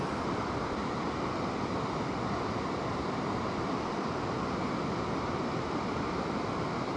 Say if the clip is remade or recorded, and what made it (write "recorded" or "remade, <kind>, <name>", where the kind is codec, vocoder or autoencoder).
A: recorded